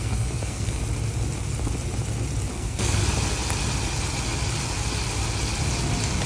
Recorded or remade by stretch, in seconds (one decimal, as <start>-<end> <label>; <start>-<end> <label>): 0.0-0.8 remade; 0.8-2.5 recorded; 2.5-3.0 remade; 3.0-6.3 recorded